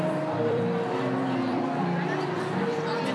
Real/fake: fake